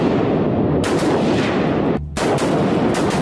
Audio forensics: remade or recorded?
recorded